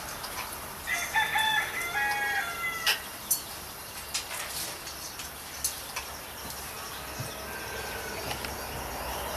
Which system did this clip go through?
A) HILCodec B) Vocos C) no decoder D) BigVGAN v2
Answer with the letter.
C